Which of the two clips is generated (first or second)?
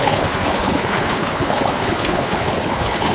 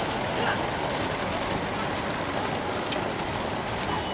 first